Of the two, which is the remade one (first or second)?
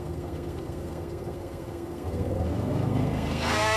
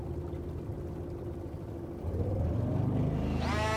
first